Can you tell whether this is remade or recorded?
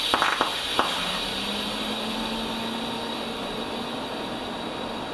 recorded